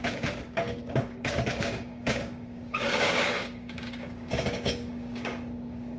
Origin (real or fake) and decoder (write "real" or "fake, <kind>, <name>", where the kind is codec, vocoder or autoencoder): fake, codec, DAC